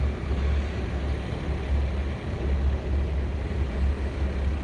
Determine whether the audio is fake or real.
real